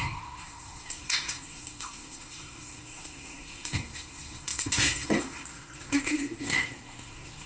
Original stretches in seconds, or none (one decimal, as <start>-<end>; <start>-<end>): none